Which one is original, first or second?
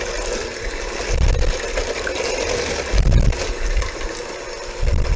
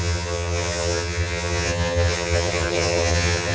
first